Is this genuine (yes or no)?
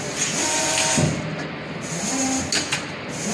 yes